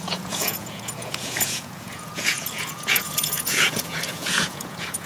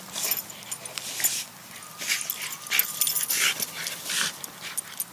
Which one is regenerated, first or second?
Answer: first